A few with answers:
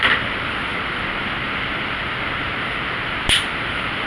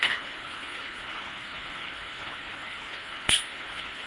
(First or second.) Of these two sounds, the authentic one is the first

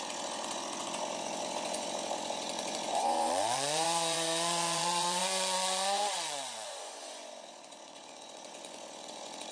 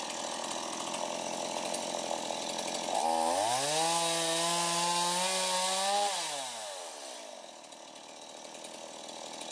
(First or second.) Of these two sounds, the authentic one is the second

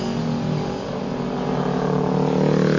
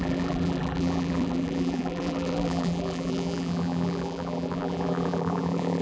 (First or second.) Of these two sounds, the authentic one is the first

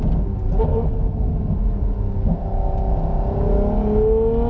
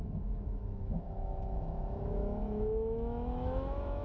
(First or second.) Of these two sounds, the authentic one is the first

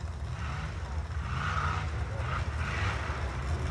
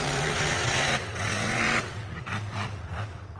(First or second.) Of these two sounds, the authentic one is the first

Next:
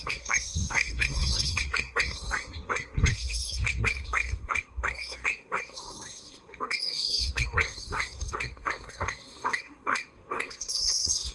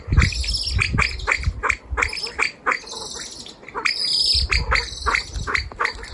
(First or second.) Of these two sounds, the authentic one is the second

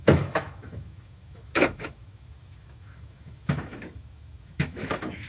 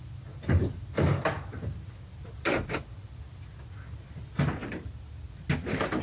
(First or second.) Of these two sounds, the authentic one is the second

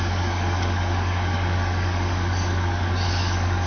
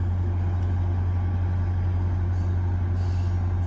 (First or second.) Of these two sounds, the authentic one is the second